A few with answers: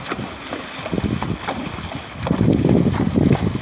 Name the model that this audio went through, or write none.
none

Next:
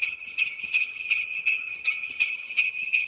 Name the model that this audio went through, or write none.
vocoder, HiFi-GAN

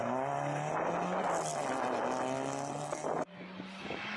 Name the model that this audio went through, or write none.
none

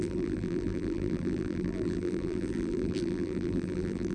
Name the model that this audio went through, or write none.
vocoder, BigVGAN v2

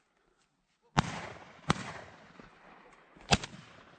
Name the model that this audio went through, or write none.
none